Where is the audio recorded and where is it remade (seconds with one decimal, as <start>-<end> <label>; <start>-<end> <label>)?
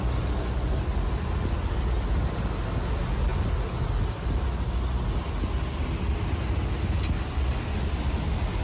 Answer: 0.0-8.6 recorded